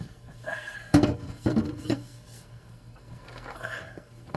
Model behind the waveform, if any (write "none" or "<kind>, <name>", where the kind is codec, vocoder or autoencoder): codec, SNAC